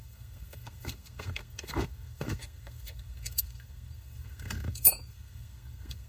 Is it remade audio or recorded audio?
remade